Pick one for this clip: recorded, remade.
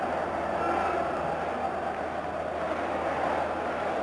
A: recorded